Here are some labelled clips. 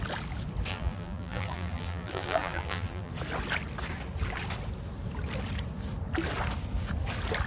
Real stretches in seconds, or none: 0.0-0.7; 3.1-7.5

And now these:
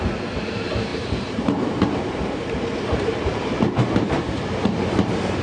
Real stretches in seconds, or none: none

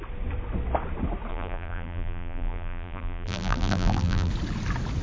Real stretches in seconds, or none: 0.0-1.3; 4.3-5.0

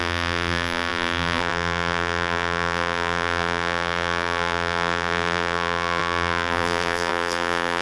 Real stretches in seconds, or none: none